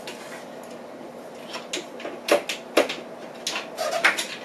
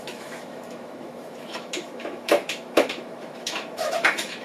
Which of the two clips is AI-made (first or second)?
second